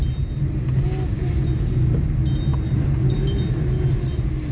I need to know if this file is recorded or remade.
recorded